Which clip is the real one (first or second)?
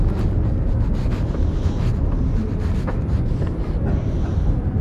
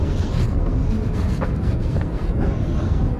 first